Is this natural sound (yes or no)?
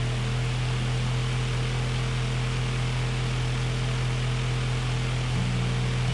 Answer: yes